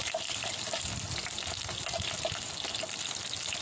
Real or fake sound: real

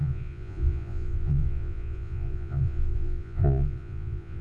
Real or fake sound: fake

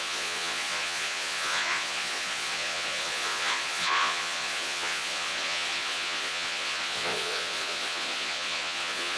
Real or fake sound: fake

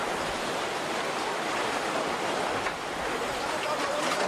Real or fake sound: real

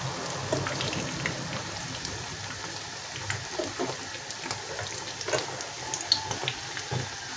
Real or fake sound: real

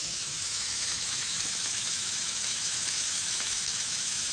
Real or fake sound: fake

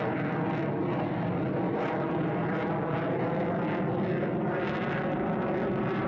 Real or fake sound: real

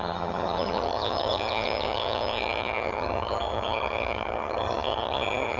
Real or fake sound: fake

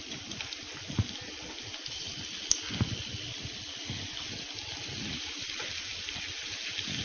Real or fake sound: real